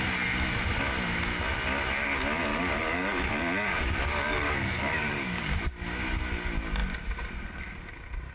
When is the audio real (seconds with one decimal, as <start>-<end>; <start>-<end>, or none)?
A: 0.0-2.5; 3.3-3.7; 5.5-8.3